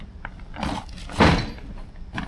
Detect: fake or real real